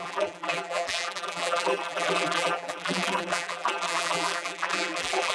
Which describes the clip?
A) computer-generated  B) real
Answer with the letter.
A